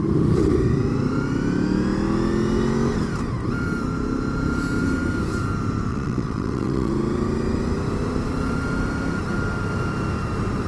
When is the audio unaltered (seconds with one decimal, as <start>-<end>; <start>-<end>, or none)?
0.0-5.9; 6.9-10.7